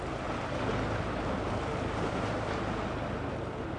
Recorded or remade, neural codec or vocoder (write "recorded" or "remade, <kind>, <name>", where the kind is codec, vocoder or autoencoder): recorded